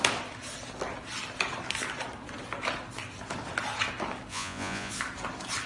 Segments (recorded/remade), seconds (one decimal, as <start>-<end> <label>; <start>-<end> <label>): 0.0-4.3 recorded; 4.3-4.9 remade; 4.9-5.7 recorded